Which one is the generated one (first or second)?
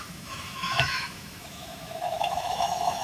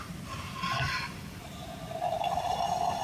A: first